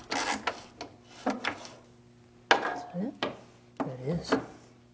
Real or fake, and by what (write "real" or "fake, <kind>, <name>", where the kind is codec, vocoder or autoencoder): real